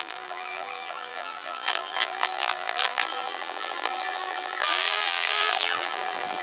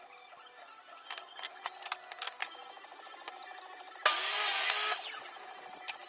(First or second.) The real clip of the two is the second